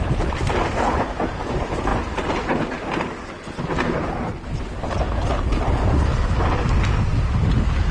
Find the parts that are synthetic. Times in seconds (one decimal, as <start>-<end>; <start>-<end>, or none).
none